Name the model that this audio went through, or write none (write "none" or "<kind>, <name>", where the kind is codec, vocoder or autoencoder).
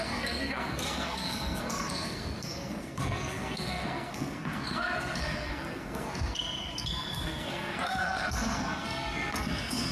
codec, SNAC